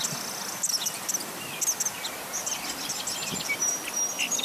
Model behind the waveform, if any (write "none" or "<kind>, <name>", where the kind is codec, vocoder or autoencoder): none